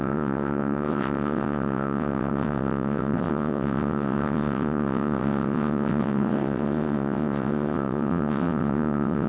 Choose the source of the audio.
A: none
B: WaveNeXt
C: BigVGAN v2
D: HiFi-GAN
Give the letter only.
B